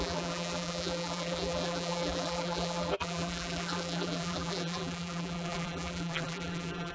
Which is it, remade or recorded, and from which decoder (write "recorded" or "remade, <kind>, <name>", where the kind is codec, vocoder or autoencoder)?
remade, vocoder, BigVGAN v2